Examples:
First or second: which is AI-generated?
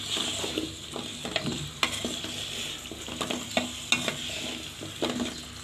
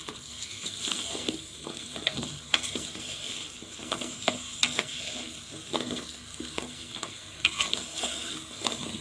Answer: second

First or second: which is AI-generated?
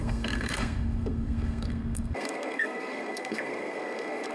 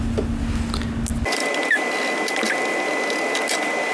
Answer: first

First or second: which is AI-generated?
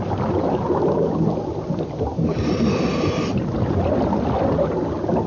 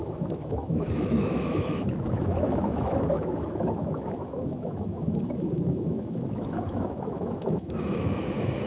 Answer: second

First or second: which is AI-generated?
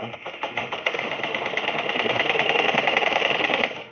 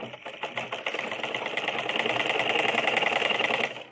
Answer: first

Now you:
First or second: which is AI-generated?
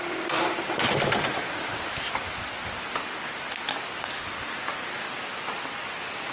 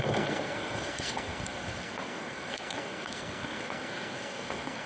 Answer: second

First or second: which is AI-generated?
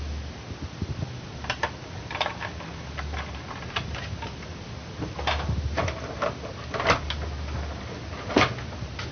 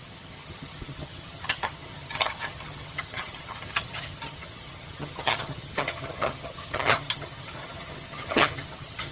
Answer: second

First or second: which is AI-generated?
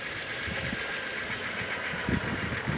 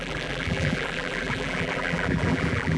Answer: second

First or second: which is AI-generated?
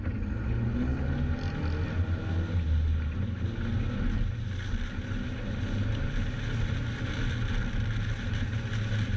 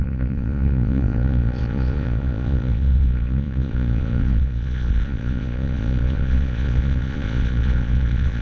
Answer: second